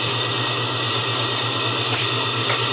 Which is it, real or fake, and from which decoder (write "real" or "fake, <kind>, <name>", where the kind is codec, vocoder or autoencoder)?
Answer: real